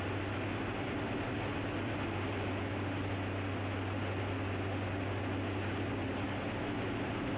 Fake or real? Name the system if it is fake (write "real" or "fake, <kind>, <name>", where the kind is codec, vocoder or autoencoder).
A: real